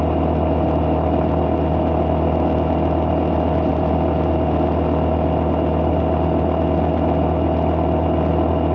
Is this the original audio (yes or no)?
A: yes